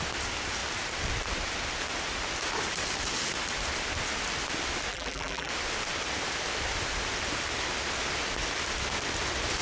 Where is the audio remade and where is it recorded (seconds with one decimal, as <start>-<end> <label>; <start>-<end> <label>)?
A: 0.0-4.9 recorded; 4.9-5.5 remade; 5.5-9.6 recorded